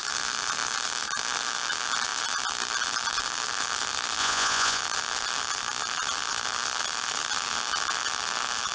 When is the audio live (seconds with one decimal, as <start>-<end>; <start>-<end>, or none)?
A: 0.0-4.2; 4.8-8.7